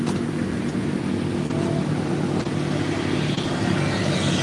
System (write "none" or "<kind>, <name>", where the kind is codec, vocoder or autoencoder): none